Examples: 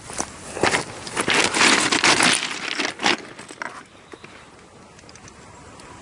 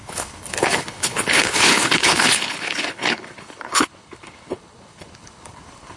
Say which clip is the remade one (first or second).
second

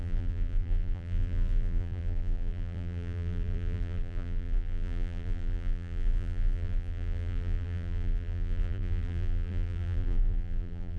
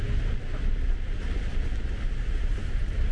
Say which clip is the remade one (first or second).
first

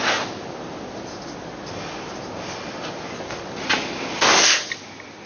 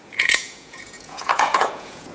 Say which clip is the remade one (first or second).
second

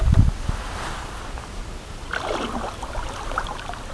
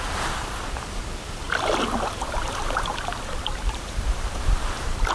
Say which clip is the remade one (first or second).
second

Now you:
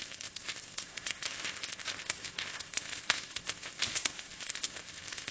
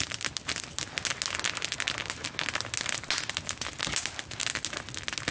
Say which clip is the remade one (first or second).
first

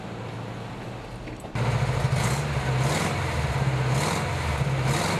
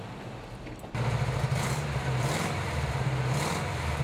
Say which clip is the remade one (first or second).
second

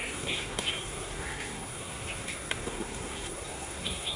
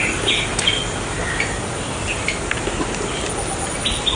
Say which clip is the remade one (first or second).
first